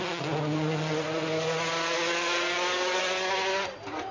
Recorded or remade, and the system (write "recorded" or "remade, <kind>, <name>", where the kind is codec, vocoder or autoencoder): recorded